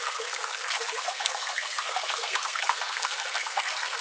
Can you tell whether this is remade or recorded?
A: remade